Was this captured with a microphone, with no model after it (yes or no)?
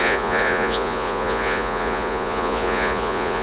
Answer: no